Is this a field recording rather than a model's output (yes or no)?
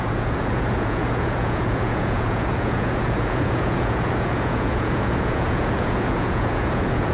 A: no